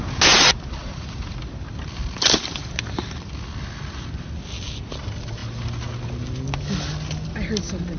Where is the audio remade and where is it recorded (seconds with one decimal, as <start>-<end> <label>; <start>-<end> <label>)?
0.0-0.8 recorded; 0.8-1.4 remade; 1.4-8.0 recorded